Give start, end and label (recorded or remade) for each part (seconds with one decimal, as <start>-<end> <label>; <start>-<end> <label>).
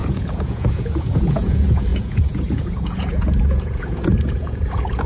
0.0-5.1 remade